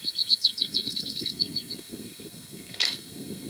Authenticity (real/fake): fake